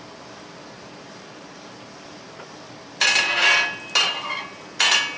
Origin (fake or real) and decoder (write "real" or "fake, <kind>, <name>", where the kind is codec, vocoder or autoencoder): real